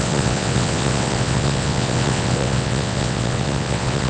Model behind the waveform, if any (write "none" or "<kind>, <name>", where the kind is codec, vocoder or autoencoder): vocoder, WaveNeXt